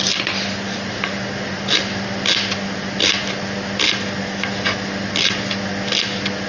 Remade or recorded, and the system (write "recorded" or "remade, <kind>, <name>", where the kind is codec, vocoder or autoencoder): recorded